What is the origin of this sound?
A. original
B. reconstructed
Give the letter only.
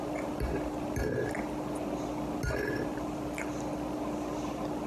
A